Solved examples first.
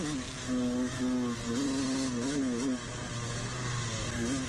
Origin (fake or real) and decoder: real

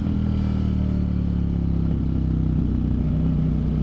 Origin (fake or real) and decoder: real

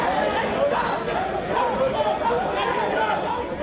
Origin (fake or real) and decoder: real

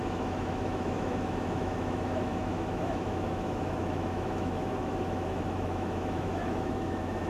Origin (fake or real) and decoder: fake, autoencoder, DAC-VAE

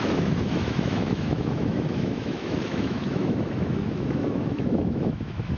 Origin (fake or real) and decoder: fake, autoencoder, DAC-VAE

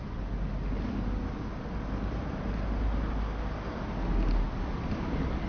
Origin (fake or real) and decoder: real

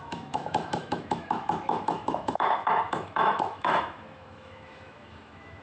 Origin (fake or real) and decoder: fake, autoencoder, DAC-VAE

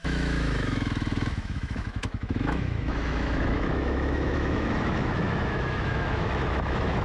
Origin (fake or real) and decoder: fake, autoencoder, DAC-VAE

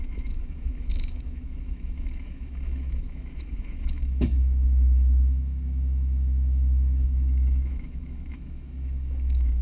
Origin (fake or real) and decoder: fake, autoencoder, DAC-VAE